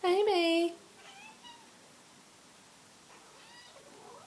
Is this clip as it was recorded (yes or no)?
yes